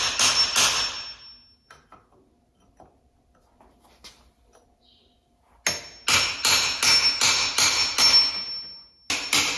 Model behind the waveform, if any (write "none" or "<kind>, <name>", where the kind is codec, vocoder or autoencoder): none